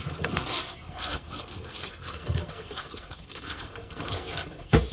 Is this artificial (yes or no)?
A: yes